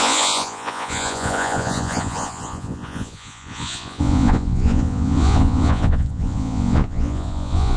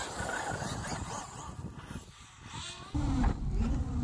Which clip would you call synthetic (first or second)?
first